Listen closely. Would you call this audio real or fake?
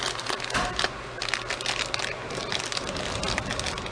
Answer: real